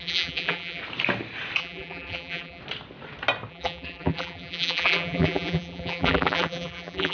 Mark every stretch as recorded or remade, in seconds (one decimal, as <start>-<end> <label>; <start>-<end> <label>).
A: 0.0-0.8 remade; 0.8-1.6 recorded; 1.6-2.6 remade; 2.6-3.5 recorded; 3.5-7.1 remade